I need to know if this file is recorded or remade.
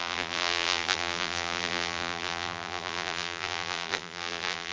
remade